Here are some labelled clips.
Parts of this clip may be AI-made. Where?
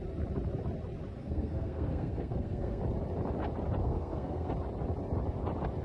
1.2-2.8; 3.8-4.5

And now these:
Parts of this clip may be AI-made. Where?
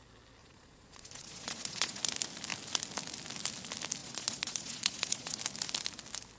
0.4-2.0; 4.0-5.4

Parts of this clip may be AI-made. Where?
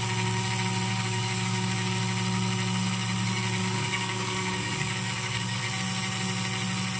0.9-2.0; 3.6-5.6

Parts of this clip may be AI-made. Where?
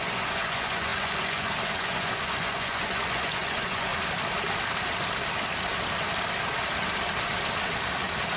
0.0-3.9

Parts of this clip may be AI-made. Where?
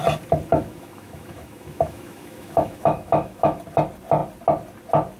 0.5-3.6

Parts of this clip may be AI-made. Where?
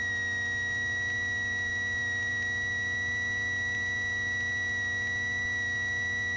none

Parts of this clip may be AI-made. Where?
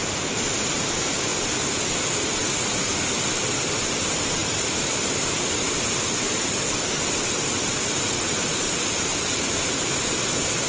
0.0-1.3; 2.2-2.9; 4.0-10.7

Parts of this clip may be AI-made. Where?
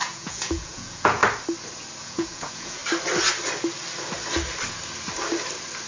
0.0-1.2; 2.0-2.8